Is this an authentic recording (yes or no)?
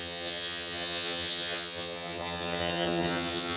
no